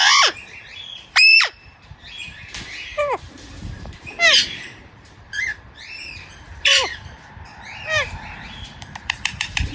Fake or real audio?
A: fake